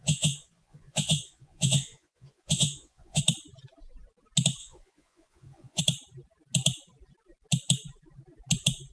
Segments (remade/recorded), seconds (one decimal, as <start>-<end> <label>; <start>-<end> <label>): 0.0-3.2 remade; 3.2-4.6 recorded; 4.6-5.8 remade; 5.8-8.9 recorded